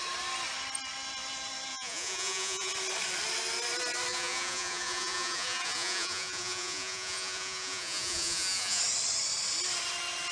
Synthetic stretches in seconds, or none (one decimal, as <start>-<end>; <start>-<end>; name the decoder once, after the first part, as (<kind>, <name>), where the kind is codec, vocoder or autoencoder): 1.7-2.7 (vocoder, Vocos); 4.1-8.8